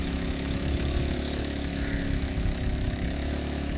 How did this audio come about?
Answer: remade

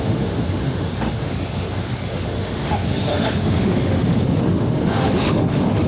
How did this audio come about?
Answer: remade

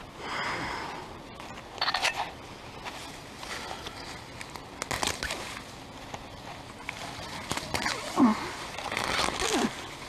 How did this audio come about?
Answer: recorded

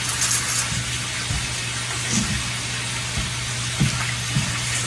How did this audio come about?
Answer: recorded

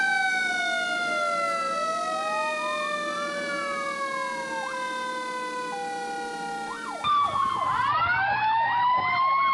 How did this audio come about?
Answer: recorded